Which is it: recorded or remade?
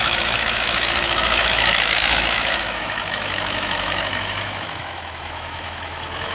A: remade